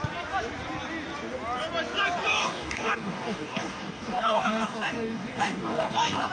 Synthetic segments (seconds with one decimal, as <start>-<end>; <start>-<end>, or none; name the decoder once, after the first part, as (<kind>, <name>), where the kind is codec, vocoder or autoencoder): 2.3-6.3 (codec, DAC)